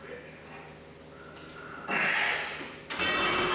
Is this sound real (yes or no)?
yes